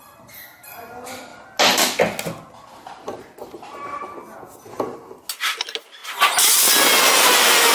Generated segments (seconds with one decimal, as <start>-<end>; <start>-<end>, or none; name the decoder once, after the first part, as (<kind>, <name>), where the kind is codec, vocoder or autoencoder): none